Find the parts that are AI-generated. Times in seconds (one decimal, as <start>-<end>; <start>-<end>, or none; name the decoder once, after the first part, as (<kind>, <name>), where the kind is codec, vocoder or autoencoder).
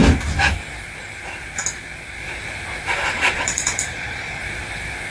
3.1-4.4 (vocoder, Vocos)